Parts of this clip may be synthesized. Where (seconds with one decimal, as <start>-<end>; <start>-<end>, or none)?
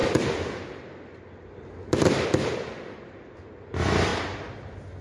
none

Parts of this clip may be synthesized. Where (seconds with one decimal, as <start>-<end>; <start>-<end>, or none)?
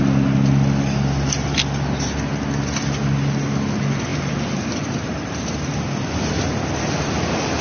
4.1-6.3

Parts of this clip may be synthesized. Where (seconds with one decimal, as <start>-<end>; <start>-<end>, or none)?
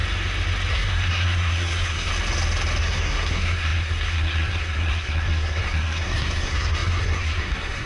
0.7-2.1; 2.8-7.9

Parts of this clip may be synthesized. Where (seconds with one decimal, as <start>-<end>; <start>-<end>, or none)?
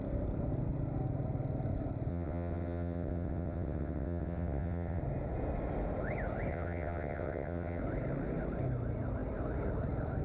2.1-5.0; 6.5-7.8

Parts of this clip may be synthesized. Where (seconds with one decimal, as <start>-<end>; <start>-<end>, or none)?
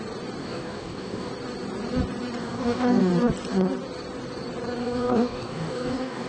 0.4-1.3; 2.4-3.1; 4.8-6.3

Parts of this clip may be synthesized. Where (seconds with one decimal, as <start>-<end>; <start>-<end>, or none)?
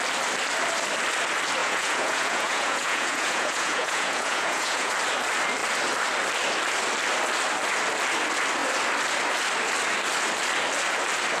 1.6-4.9